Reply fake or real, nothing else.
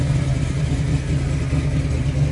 real